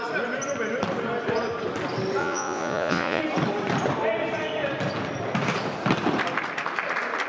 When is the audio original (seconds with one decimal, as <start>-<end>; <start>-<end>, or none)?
0.0-2.2; 3.2-7.3